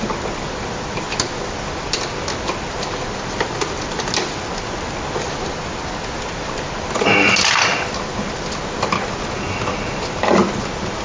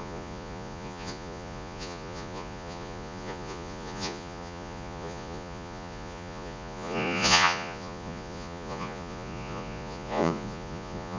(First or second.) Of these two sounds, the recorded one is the first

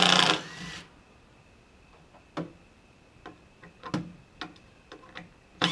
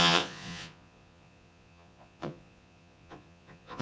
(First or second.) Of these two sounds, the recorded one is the first